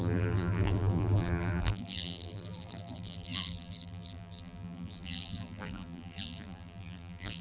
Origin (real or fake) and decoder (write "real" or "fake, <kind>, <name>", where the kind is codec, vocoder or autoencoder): fake, vocoder, BigVGAN v2